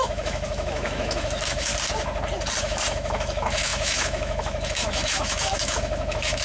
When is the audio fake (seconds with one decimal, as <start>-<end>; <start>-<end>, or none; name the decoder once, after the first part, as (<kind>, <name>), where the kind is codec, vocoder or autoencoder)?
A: 0.0-1.7 (autoencoder, DAC-VAE); 2.6-6.4